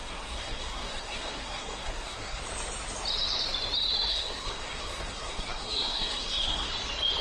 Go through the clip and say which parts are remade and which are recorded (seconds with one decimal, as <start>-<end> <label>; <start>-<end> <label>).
0.0-2.4 remade; 2.4-4.1 recorded; 4.1-6.7 remade; 6.7-7.2 recorded